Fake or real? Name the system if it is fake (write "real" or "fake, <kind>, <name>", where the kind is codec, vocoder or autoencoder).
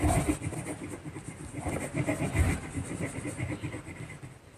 real